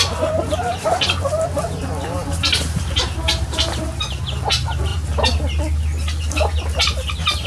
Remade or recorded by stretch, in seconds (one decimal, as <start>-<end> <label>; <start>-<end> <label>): 0.0-2.2 recorded; 2.2-4.5 remade; 4.5-7.5 recorded